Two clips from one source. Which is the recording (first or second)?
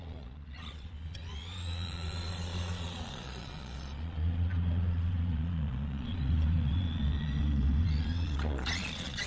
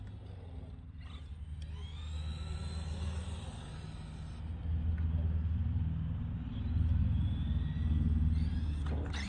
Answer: second